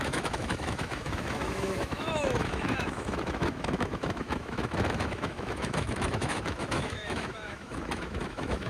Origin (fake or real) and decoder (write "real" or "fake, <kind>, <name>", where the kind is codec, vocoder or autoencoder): fake, autoencoder, DAC-VAE